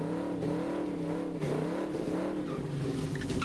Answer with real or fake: real